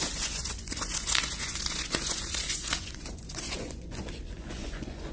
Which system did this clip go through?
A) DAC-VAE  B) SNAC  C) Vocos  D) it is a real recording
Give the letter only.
C